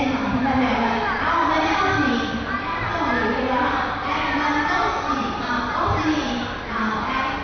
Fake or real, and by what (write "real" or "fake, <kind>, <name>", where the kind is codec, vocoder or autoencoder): real